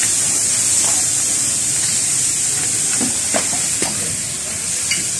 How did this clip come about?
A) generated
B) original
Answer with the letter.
B